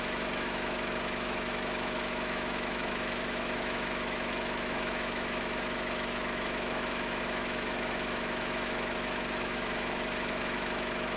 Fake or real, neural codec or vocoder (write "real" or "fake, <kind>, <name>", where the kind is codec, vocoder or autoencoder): fake, autoencoder, DAC-VAE